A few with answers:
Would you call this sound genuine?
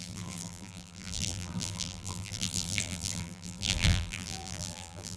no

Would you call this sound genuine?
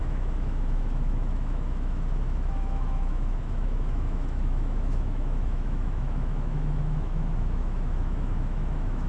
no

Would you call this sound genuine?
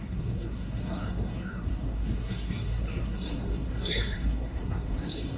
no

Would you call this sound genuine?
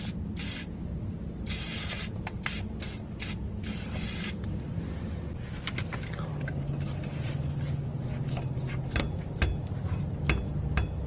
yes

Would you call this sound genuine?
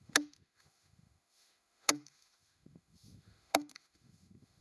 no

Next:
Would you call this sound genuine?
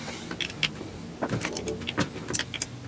yes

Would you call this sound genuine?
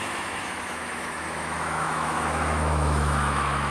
no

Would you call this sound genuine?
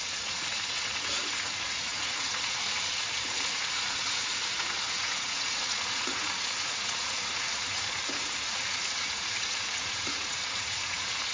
no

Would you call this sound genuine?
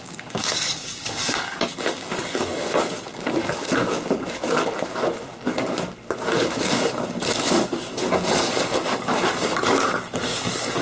no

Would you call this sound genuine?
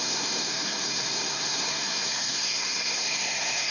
no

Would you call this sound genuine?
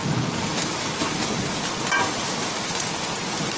yes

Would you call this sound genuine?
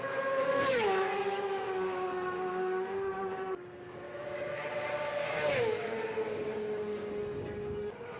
no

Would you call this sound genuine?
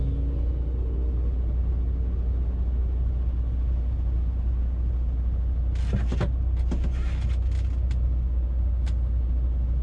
yes